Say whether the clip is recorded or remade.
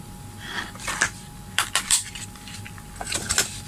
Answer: remade